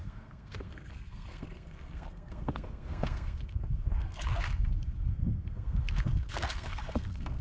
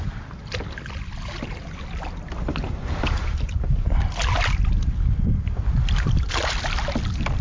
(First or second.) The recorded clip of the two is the second